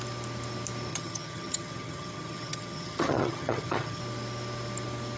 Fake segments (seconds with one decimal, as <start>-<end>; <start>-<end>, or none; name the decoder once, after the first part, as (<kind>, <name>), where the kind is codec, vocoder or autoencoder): 0.9-4.0 (vocoder, HiFi-GAN)